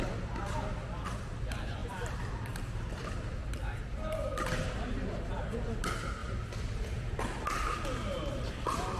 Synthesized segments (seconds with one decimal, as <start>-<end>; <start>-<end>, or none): 1.8-2.3; 3.4-4.7; 6.2-7.2